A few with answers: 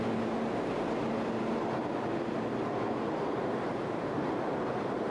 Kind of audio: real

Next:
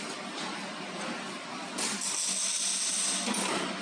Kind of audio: real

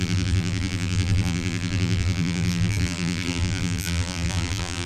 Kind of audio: fake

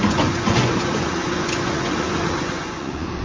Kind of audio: fake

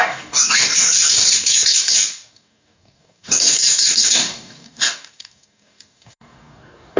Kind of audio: fake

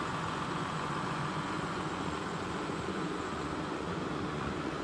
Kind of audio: fake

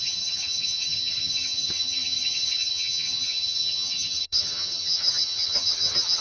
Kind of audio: fake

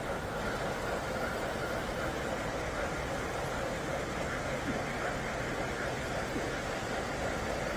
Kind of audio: real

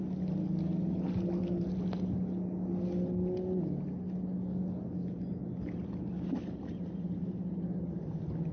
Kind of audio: real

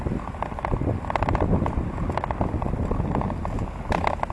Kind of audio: real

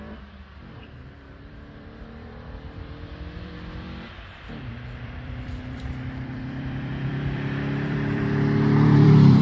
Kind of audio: fake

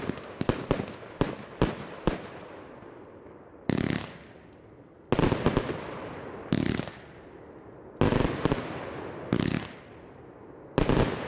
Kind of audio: real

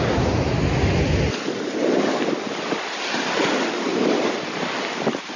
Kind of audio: real